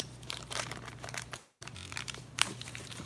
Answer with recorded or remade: remade